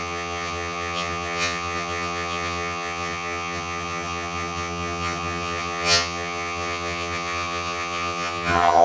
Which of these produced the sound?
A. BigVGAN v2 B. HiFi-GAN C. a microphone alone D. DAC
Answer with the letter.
B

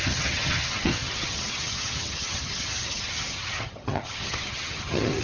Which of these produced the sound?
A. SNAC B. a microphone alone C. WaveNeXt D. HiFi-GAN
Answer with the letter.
D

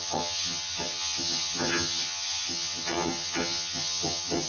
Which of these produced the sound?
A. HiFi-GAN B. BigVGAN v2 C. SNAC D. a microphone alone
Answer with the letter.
A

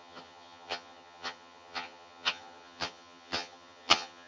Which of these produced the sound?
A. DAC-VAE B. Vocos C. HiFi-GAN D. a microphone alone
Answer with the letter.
C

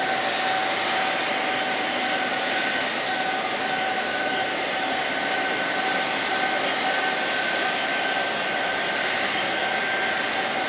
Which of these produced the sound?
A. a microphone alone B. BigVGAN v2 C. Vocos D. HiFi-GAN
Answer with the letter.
A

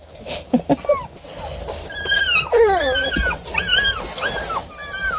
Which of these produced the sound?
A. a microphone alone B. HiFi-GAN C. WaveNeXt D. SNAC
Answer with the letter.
A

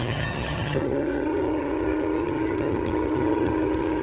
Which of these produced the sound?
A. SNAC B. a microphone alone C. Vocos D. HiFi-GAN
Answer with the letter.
D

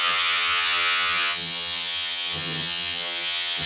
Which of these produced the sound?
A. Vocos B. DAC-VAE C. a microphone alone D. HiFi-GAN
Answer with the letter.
D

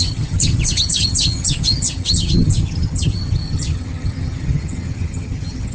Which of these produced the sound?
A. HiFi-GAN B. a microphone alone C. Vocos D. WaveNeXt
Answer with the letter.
A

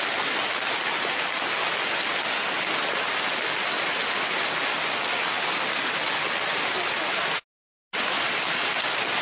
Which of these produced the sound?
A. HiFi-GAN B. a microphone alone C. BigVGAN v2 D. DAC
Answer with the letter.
B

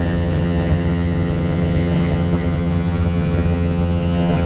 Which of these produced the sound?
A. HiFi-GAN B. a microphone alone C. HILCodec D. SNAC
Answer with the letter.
A